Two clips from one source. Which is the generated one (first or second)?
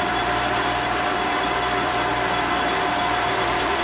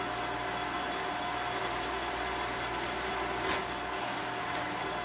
first